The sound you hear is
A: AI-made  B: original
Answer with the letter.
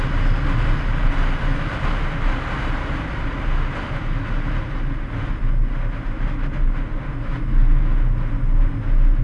B